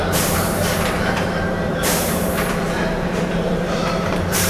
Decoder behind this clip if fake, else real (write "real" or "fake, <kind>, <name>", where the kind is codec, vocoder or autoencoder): fake, vocoder, BigVGAN v2